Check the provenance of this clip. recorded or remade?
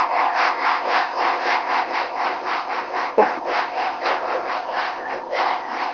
remade